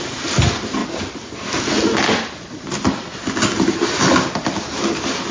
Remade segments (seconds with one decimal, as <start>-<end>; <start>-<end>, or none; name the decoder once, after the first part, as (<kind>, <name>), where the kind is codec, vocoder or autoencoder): none